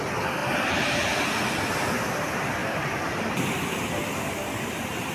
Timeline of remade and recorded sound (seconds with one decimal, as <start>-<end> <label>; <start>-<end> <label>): 0.0-2.6 recorded; 2.6-3.4 remade; 3.4-5.1 recorded